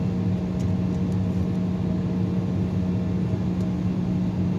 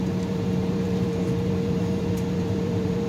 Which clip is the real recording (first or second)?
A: first